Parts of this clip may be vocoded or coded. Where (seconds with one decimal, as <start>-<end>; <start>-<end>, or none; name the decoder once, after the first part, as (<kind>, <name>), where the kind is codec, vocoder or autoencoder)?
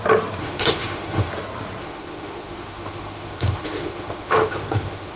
0.4-1.3 (autoencoder, DAC-VAE); 1.8-5.2